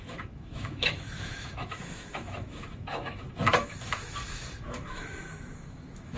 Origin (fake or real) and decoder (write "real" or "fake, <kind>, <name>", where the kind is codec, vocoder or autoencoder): fake, autoencoder, DAC-VAE